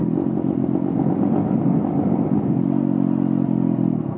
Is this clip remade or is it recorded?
recorded